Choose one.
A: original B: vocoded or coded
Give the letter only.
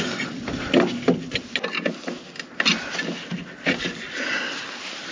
A